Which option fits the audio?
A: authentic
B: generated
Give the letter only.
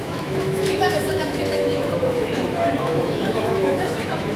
B